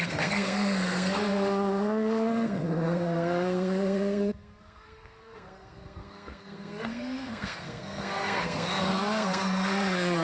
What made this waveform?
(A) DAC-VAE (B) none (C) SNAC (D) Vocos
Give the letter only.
C